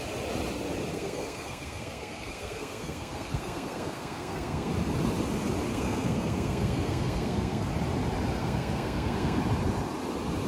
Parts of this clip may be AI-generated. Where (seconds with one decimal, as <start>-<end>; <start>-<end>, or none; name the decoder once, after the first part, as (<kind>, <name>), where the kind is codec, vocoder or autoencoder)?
0.9-4.7 (codec, SNAC); 5.7-7.7; 8.4-9.4